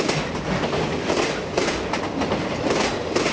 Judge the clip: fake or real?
real